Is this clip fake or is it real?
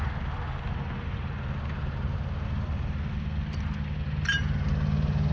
real